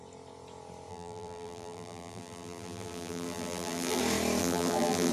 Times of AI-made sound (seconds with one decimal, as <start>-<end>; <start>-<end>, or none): 0.9-4.0; 4.4-5.1